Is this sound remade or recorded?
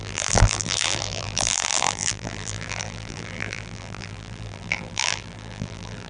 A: remade